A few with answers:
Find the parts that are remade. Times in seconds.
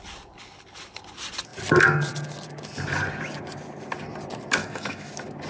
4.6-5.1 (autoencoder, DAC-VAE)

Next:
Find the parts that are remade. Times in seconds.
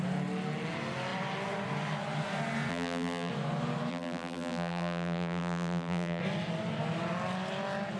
2.7-3.3 (vocoder, BigVGAN v2); 3.9-6.2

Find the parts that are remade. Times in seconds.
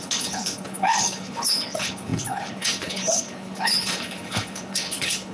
0.0-5.3 (codec, HILCodec)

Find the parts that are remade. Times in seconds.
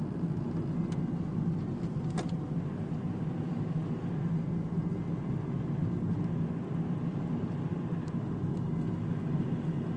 none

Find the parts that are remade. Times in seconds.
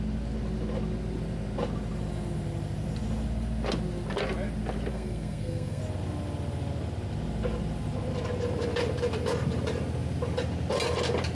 4.9-5.8 (codec, SNAC)